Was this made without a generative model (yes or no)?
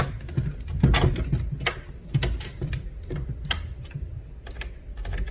yes